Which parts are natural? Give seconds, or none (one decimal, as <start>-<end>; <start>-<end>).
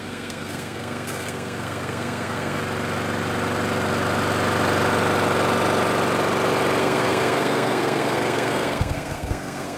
2.6-6.8